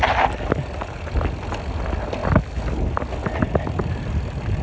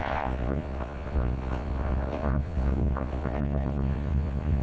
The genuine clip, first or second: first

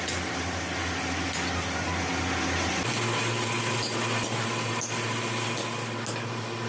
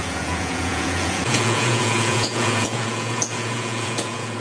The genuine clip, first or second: first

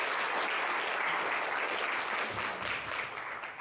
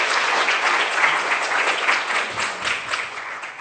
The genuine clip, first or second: first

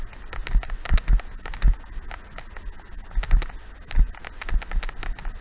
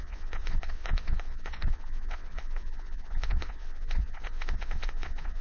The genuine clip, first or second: first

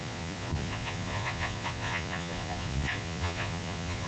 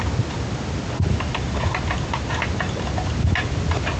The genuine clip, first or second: second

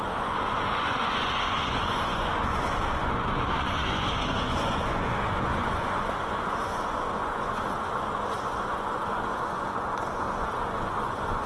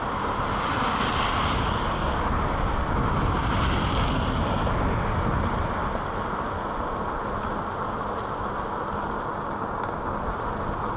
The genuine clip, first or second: second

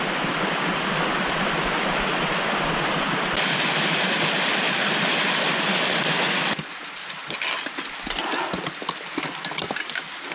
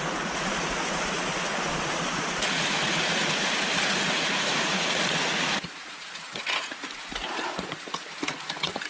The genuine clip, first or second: first